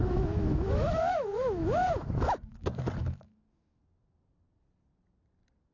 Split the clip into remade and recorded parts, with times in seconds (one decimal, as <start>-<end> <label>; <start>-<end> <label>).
0.0-2.5 remade; 2.5-3.0 recorded; 3.0-3.8 remade; 3.8-5.7 recorded